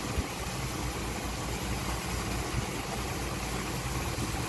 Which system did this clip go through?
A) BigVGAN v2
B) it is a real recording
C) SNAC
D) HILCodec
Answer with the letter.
B